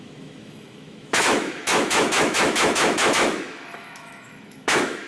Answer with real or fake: fake